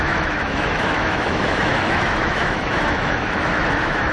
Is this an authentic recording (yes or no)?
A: no